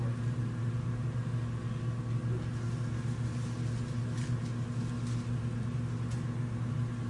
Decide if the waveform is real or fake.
real